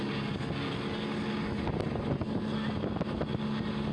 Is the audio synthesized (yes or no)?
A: no